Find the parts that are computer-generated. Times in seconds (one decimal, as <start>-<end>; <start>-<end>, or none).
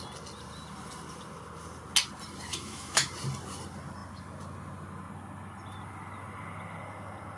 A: 2.5-3.1